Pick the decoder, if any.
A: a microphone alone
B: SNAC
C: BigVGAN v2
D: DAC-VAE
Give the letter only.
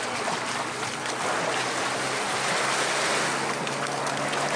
A